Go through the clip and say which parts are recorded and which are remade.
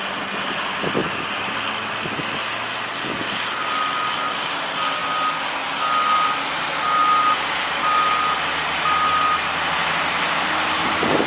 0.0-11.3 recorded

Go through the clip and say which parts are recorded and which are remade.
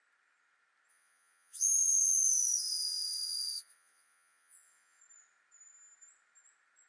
0.0-0.9 recorded; 0.9-5.0 remade; 5.0-6.9 recorded